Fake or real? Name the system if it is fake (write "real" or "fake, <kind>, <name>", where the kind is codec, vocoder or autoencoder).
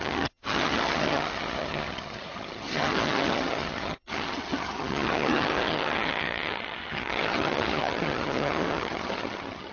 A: fake, vocoder, HiFi-GAN